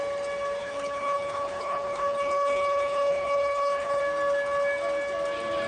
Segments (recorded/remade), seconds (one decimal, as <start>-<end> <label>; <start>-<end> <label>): 0.0-0.6 recorded; 0.6-4.0 remade; 4.0-5.7 recorded